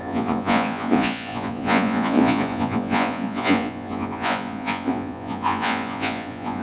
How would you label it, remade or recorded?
remade